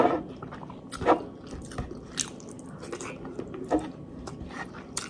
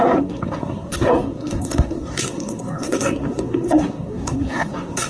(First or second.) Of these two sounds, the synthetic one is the second